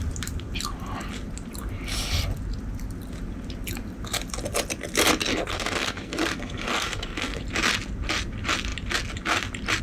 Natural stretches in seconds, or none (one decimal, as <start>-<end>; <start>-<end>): 0.0-5.3; 7.4-9.8